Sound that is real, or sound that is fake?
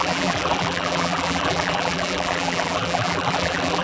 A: fake